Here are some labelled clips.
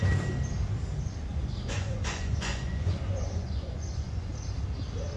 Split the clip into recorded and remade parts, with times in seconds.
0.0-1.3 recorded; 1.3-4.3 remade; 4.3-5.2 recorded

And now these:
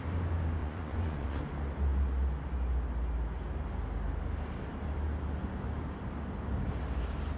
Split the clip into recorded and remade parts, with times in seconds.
0.0-0.6 recorded; 0.6-1.4 remade; 1.4-7.4 recorded

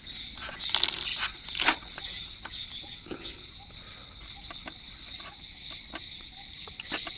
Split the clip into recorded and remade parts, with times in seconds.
0.0-7.2 recorded

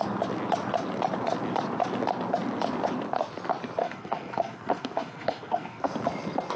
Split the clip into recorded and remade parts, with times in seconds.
0.0-3.8 recorded; 3.8-5.9 remade; 5.9-6.6 recorded

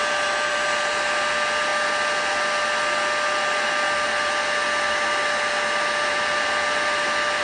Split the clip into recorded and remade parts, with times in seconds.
0.0-7.4 recorded

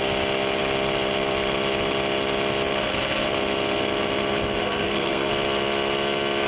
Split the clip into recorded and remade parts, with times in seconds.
0.0-4.6 recorded; 4.6-5.3 remade; 5.3-6.5 recorded

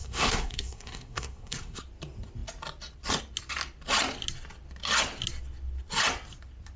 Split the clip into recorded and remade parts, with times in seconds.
0.0-1.8 remade; 1.8-6.8 recorded

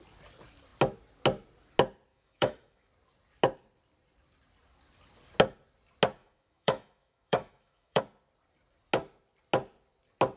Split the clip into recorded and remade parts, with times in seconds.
0.0-2.1 recorded; 2.1-2.9 remade; 2.9-6.2 recorded; 6.2-8.0 remade; 8.0-10.4 recorded